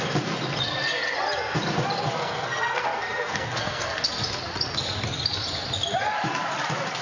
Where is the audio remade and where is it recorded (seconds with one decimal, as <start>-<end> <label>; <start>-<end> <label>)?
0.0-2.2 recorded; 2.2-4.0 remade; 4.0-7.0 recorded